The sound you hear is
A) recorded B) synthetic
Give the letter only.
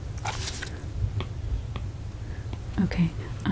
A